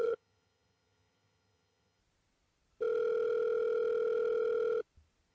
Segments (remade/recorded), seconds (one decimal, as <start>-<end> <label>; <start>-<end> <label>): 0.0-2.0 remade; 2.0-5.3 recorded